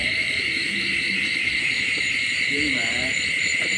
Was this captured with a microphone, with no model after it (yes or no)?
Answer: no